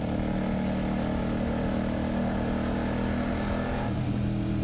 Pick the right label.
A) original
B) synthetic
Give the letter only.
A